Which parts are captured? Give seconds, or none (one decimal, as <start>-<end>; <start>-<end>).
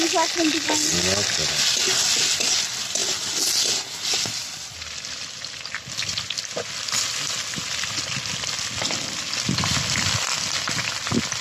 0.0-11.4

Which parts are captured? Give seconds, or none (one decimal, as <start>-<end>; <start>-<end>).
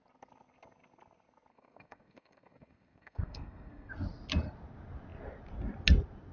0.0-1.5; 3.9-6.3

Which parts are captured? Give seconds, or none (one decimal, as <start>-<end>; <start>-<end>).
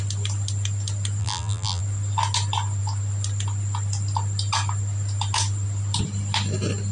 0.0-1.2; 1.8-6.9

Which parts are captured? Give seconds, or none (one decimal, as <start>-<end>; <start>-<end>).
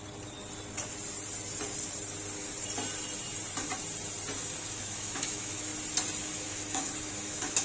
0.0-4.6; 5.7-6.2